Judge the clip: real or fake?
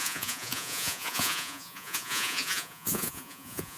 fake